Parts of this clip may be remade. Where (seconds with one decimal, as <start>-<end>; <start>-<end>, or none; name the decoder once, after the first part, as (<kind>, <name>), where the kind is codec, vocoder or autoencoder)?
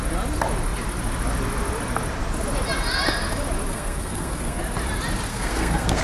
3.7-4.6 (codec, SNAC); 5.3-6.0